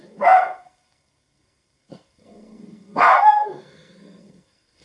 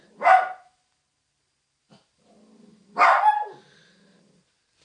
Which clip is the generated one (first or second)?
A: first